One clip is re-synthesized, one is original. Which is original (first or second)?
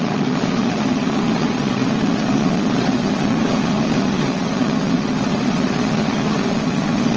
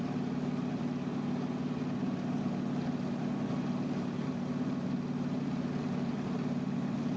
second